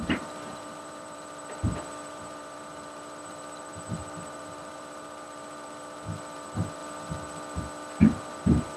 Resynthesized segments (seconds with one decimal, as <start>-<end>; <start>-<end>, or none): 0.0-6.8; 8.0-8.8